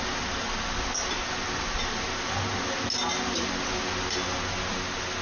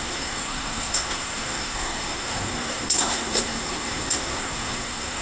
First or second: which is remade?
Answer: second